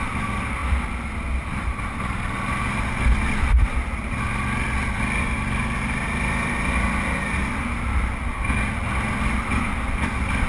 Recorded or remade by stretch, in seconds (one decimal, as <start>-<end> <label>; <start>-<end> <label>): 0.0-10.5 recorded